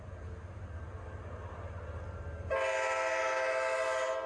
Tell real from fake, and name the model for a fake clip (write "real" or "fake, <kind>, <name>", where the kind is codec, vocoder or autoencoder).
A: real